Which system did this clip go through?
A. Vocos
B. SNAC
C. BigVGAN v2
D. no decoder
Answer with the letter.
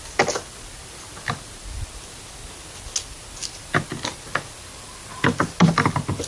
D